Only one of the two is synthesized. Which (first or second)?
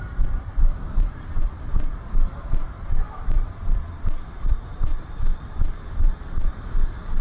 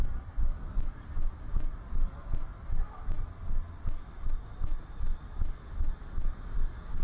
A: first